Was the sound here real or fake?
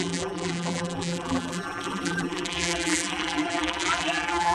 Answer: fake